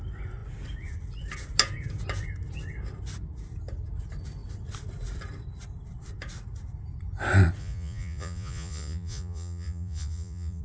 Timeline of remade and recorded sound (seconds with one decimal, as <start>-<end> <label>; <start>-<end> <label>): 0.0-7.6 recorded; 7.6-10.6 remade